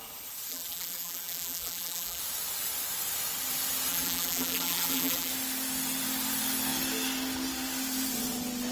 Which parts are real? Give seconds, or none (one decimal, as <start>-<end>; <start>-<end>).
0.0-0.5; 2.2-3.9; 5.3-8.7